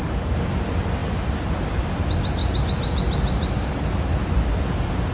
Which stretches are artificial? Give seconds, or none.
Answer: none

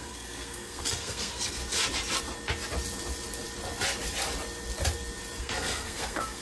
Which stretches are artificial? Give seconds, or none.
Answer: 0.0-1.6 (codec, SNAC); 5.4-6.4

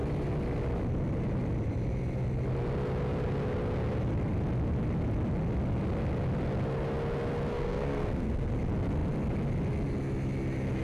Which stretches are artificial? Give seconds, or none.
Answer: 7.5-8.5 (codec, SNAC)